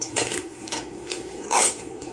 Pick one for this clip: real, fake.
fake